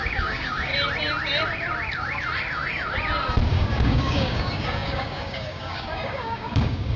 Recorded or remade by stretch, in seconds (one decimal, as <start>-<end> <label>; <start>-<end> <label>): 0.0-0.7 remade; 0.7-3.5 recorded; 3.5-7.0 remade